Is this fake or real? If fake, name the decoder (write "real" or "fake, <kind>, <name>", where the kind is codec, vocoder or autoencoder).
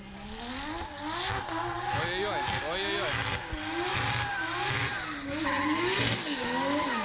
real